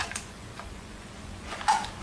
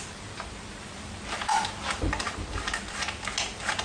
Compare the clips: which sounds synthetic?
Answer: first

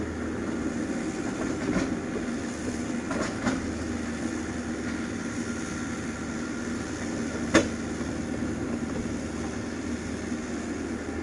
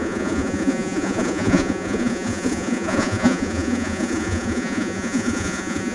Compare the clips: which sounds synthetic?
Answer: second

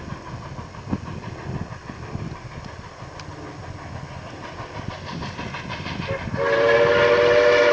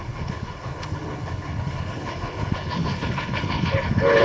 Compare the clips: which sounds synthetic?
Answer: second